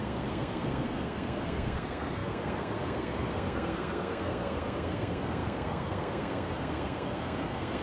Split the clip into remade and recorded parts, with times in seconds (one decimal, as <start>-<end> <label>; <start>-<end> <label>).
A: 0.0-7.8 remade